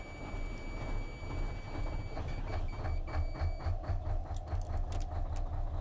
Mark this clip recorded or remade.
recorded